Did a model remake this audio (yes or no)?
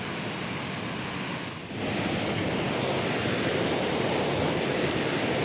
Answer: yes